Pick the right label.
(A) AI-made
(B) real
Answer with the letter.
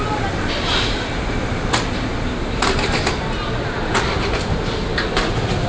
B